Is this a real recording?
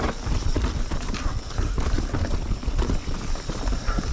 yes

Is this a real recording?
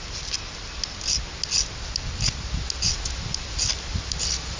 yes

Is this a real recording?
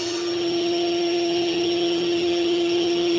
no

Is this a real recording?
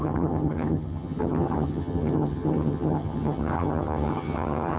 no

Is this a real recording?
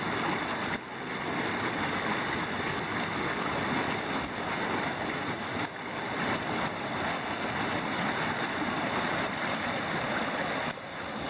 yes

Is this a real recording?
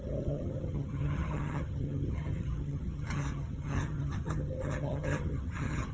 no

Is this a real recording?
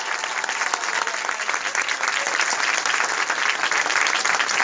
yes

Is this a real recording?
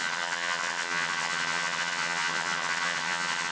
no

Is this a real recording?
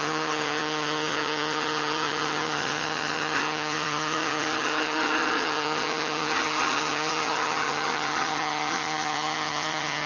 no